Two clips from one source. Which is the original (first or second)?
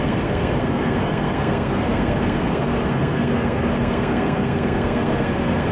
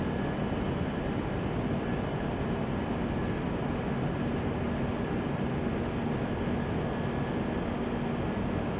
second